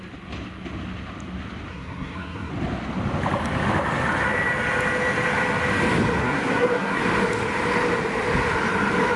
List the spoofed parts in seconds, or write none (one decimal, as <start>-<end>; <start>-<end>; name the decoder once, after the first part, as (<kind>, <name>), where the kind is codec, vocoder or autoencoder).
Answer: 1.7-2.5 (codec, SNAC); 6.2-7.0